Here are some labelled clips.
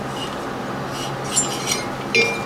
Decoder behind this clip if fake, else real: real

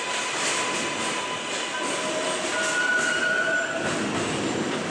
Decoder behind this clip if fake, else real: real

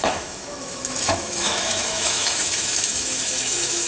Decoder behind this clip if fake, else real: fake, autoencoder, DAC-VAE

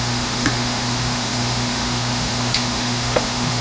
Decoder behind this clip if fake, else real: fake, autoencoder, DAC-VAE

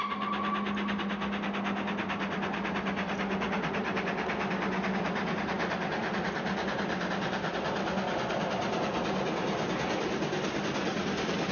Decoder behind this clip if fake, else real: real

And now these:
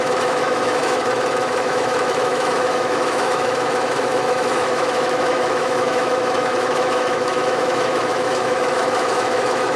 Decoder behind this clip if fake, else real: fake, autoencoder, DAC-VAE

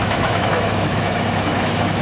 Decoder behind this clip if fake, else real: fake, autoencoder, DAC-VAE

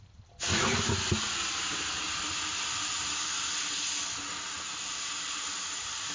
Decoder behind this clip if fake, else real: real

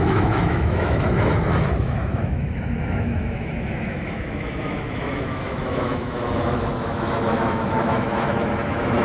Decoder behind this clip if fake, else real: fake, autoencoder, DAC-VAE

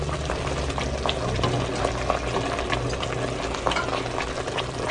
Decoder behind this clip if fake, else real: real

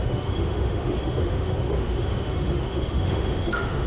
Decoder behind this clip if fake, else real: fake, autoencoder, DAC-VAE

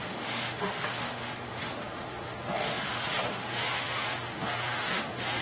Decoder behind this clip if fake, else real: fake, autoencoder, DAC-VAE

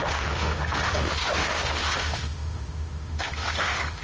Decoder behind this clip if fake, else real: fake, autoencoder, DAC-VAE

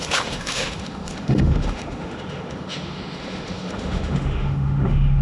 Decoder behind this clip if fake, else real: fake, autoencoder, DAC-VAE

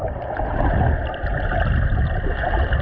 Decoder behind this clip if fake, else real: real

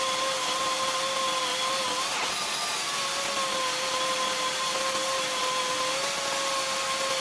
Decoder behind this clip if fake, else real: real